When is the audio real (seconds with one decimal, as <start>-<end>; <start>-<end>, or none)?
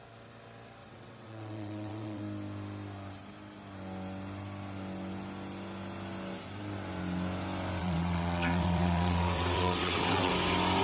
0.0-0.8; 2.2-7.8; 10.3-10.8